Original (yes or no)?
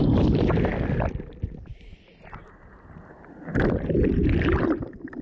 yes